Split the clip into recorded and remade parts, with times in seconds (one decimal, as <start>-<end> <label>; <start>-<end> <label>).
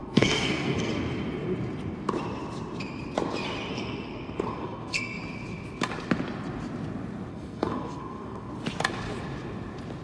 0.0-0.9 remade; 0.9-3.7 recorded; 3.7-5.2 remade; 5.2-7.3 recorded; 7.3-8.5 remade; 8.5-10.0 recorded